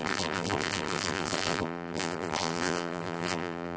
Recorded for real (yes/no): no